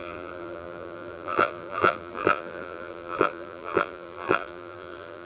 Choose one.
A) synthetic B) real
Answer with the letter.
A